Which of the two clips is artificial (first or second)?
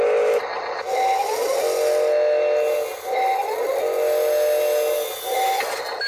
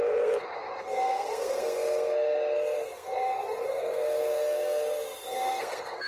second